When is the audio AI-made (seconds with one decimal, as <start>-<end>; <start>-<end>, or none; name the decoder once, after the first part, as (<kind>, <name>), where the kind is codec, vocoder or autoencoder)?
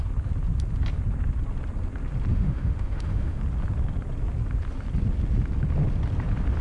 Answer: 2.3-3.4 (autoencoder, DAC-VAE)